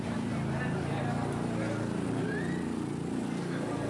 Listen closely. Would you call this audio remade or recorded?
recorded